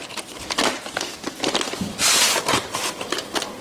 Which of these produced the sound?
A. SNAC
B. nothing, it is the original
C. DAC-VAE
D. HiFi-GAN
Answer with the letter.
B